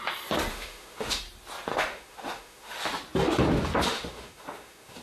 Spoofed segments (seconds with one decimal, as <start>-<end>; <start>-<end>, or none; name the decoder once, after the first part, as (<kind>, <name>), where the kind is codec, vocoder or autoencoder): 0.5-1.2 (autoencoder, DAC-VAE); 1.7-2.8; 3.9-5.0